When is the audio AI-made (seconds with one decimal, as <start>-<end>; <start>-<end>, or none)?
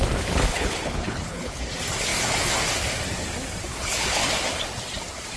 0.5-1.7; 3.7-4.2